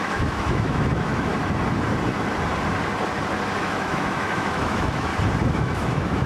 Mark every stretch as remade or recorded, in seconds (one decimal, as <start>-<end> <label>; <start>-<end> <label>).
0.0-1.3 remade; 1.3-3.6 recorded; 3.6-5.1 remade; 5.1-5.6 recorded; 5.6-6.3 remade